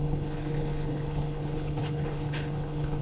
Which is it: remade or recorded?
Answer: remade